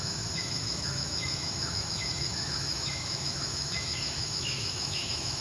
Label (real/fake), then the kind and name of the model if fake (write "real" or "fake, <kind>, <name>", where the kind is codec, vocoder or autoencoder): fake, autoencoder, DAC-VAE